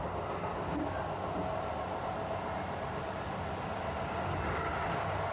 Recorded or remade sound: recorded